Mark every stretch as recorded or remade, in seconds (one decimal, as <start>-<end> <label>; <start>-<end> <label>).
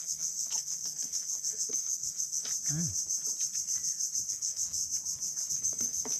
0.0-2.5 remade; 2.5-4.3 recorded; 4.3-4.8 remade; 4.8-5.5 recorded; 5.5-6.2 remade